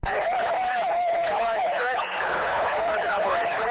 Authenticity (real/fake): fake